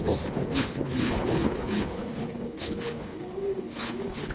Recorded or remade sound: remade